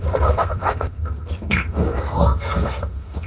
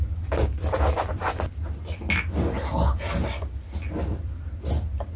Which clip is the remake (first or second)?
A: first